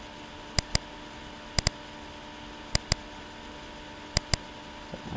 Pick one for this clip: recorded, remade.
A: recorded